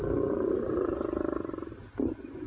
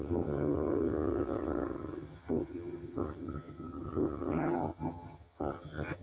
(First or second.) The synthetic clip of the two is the second